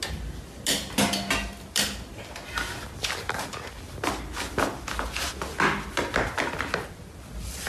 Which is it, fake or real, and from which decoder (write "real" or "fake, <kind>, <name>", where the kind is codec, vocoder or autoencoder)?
real